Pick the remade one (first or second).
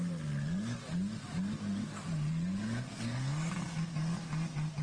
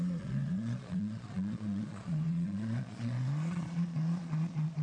second